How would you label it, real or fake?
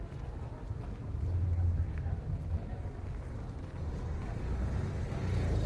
real